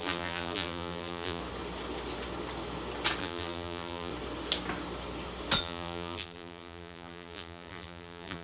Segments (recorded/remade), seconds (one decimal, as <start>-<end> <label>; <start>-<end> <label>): 0.0-1.4 remade; 1.4-3.2 recorded; 3.2-4.1 remade; 4.1-5.6 recorded; 5.6-8.4 remade